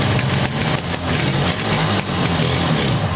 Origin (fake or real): real